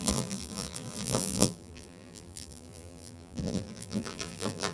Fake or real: fake